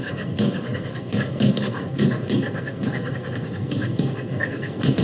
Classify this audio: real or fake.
fake